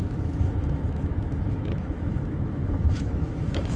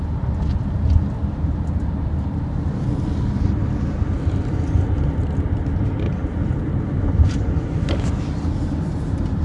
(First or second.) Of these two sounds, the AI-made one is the first